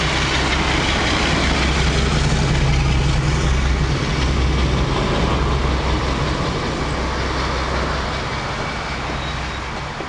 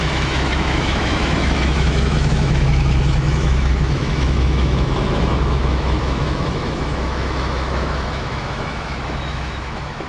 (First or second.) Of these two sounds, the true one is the first